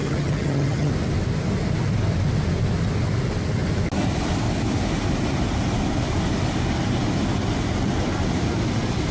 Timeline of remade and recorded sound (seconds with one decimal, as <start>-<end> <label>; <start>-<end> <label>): 0.0-0.9 remade; 0.9-9.1 recorded